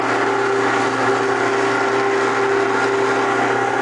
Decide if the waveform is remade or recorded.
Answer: recorded